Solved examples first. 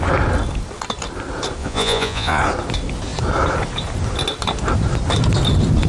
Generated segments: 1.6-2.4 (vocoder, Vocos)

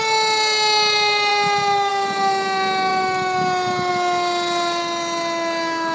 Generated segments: none

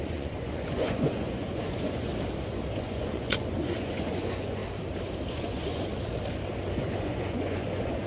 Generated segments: 0.0-2.1 (vocoder, Vocos); 2.8-4.6; 5.3-5.9; 7.0-8.1

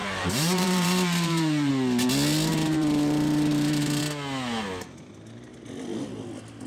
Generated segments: 0.0-1.7 (vocoder, BigVGAN v2); 2.5-4.0

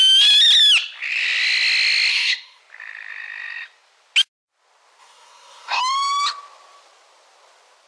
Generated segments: 2.1-2.6 (codec, SNAC); 5.0-5.8

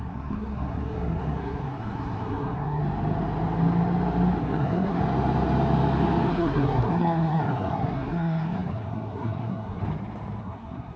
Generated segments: 0.0-2.8 (codec, SNAC); 4.4-5.0; 6.3-9.8; 10.4-11.0